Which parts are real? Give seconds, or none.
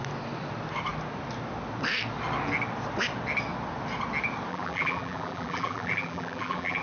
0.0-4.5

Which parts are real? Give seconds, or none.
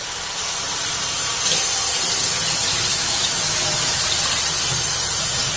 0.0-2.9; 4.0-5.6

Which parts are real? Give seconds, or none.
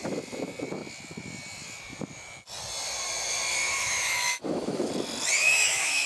0.0-3.6; 4.9-5.4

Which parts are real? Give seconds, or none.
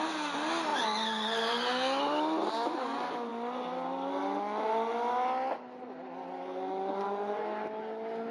0.0-8.3